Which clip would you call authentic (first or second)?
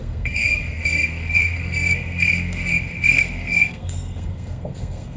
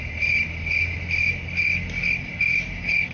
second